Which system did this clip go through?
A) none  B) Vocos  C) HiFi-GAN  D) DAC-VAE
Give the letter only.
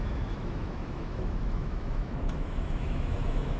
D